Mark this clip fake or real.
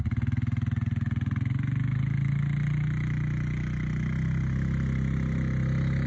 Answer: real